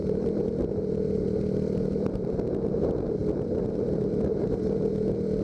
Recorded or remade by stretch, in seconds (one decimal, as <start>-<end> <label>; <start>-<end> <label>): 0.0-2.7 remade; 2.7-3.2 recorded; 3.2-4.6 remade; 4.6-5.4 recorded